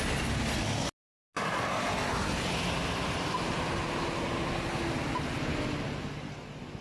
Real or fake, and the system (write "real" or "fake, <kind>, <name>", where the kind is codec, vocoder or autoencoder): real